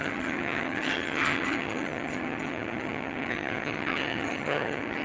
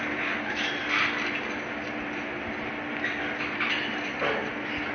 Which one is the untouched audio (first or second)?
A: second